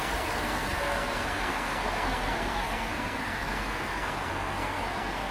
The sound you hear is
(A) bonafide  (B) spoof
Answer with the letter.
B